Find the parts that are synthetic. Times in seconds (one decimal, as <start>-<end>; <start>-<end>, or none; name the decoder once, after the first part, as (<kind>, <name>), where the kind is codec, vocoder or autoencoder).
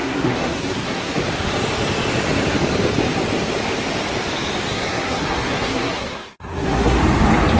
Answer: 0.0-1.2 (codec, SNAC); 4.7-7.0